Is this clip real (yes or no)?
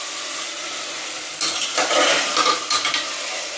yes